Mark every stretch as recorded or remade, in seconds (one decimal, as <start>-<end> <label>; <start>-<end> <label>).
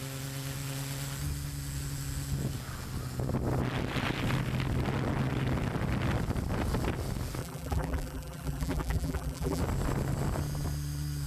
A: 0.0-7.4 recorded; 7.4-9.6 remade; 9.6-11.3 recorded